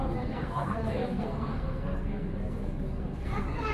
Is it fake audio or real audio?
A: fake